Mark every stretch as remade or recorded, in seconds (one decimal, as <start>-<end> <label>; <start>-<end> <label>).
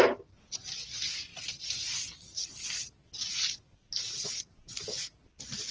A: 0.0-3.8 recorded; 3.8-5.2 remade; 5.2-5.7 recorded